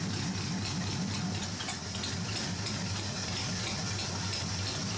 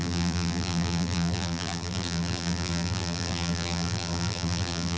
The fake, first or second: second